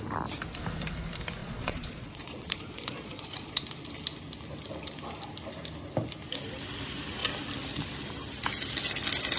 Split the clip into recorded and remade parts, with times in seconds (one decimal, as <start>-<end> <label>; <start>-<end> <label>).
0.0-1.4 recorded; 1.4-3.6 remade; 3.6-9.4 recorded